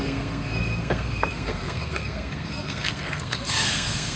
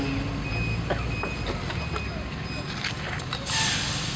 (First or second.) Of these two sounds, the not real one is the first